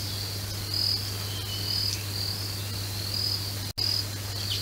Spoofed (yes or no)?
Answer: no